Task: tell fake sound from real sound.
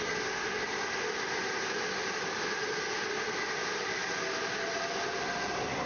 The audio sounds real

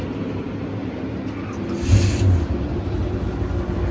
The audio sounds real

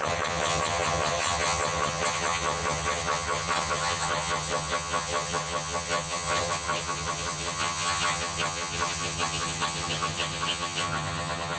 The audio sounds fake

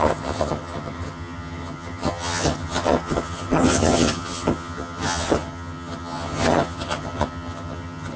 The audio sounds fake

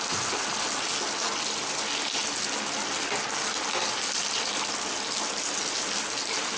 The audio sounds real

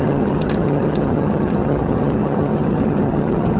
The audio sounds fake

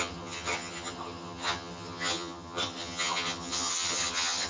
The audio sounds fake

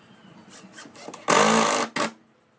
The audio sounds real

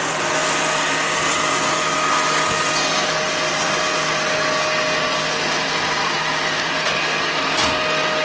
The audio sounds real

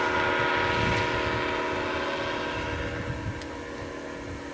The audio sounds real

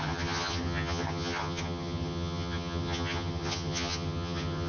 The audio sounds fake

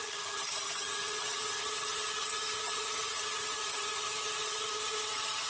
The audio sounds fake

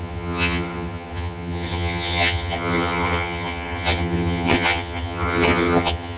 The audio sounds fake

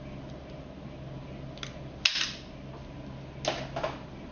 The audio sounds real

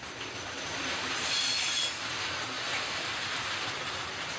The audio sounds real